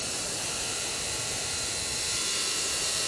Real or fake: fake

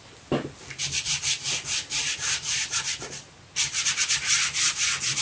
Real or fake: real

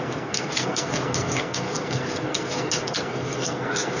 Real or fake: fake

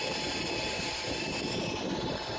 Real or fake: fake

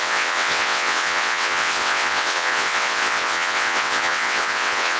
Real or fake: fake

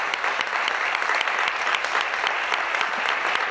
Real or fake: real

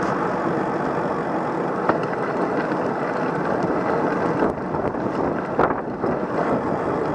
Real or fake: real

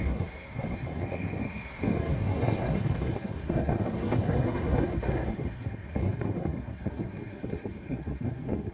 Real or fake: fake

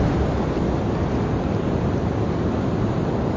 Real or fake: real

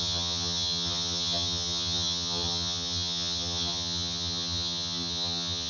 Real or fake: fake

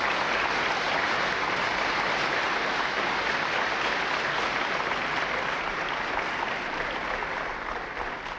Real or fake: real